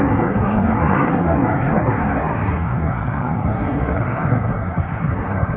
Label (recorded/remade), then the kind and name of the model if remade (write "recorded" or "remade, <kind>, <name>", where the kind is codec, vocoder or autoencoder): remade, codec, SNAC